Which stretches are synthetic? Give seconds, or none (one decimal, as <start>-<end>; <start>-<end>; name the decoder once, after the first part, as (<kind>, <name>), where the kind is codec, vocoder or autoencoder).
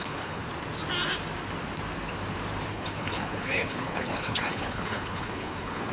0.0-0.4 (codec, HILCodec); 2.7-5.9